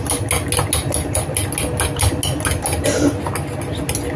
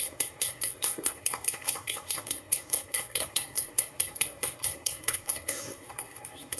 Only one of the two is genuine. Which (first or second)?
first